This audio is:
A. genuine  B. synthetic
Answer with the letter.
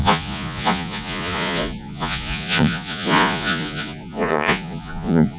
B